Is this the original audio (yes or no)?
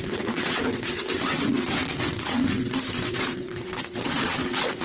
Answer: no